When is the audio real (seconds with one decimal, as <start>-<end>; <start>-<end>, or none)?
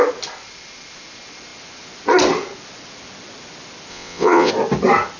0.0-3.9; 4.5-5.2